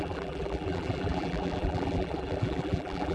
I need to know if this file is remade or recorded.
remade